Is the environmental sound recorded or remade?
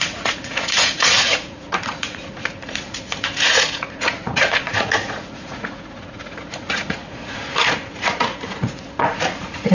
remade